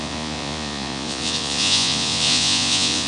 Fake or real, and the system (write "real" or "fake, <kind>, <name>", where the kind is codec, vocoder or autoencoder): fake, vocoder, Vocos